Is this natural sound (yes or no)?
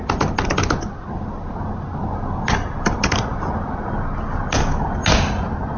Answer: yes